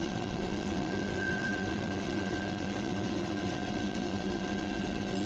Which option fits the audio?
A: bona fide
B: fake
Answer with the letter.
B